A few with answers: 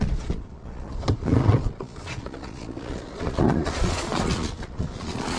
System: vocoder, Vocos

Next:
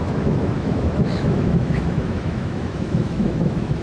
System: autoencoder, DAC-VAE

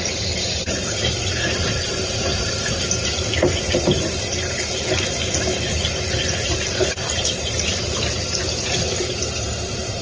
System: vocoder, BigVGAN v2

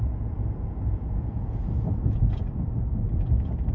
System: vocoder, Vocos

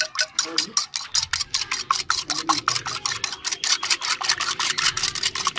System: none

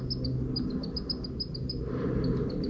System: none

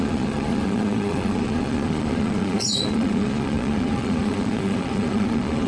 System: vocoder, Vocos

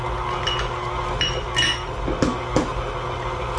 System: none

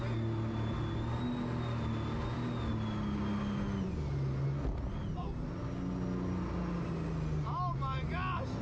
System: none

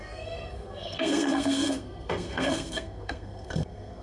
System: codec, SNAC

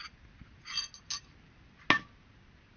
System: none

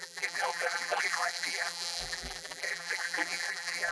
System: vocoder, BigVGAN v2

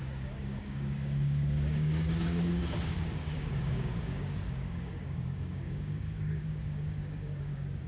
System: codec, DAC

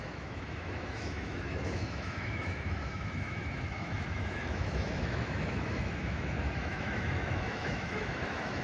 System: autoencoder, DAC-VAE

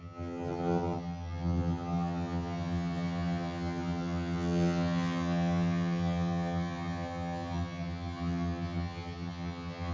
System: vocoder, HiFi-GAN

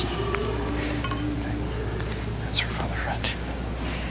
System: none